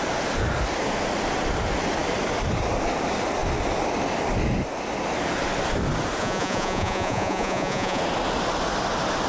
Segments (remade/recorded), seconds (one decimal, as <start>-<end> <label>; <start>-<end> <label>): 0.0-6.2 recorded; 6.2-8.0 remade; 8.0-9.3 recorded